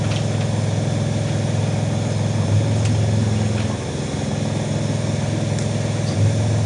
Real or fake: real